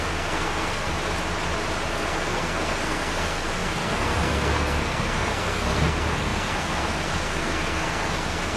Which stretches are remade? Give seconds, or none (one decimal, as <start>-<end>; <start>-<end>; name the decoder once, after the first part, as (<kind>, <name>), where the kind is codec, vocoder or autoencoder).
0.0-0.9 (codec, SNAC); 1.9-8.6